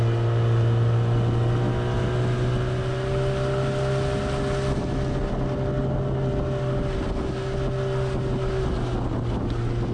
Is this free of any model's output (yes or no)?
yes